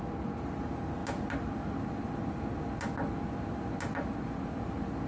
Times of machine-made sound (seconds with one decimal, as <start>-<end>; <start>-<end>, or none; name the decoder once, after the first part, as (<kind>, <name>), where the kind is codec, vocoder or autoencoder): none